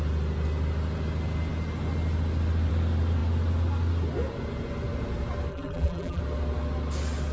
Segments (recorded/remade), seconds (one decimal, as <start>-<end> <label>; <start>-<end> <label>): 0.0-5.5 recorded; 5.5-6.2 remade; 6.2-7.3 recorded